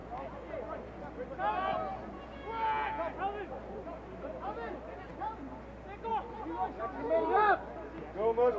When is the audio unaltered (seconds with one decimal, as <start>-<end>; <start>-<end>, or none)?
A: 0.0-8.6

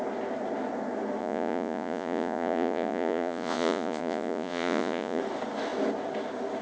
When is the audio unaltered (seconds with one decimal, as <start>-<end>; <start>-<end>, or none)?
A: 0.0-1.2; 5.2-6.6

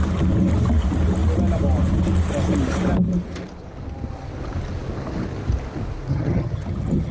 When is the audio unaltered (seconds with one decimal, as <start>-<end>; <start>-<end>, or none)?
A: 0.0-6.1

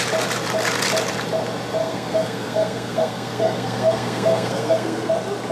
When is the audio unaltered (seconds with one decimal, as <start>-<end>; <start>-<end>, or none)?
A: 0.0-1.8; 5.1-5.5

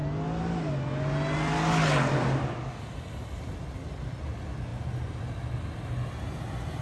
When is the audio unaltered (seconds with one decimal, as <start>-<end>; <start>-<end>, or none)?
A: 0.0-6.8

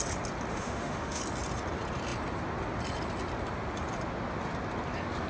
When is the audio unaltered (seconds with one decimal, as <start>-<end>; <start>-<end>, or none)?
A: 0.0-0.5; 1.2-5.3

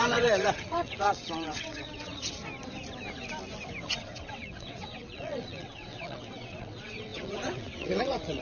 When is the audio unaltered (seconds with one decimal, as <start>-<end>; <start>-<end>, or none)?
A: 2.4-3.8

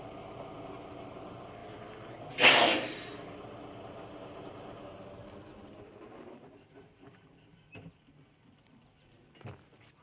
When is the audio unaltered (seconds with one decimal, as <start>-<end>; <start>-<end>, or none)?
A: 0.0-10.0